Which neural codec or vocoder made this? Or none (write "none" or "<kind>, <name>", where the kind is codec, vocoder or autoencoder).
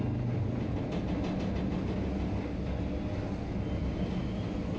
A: none